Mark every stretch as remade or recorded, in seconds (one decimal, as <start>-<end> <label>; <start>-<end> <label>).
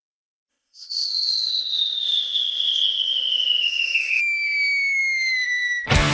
0.0-0.5 recorded; 0.5-4.2 remade; 4.2-6.1 recorded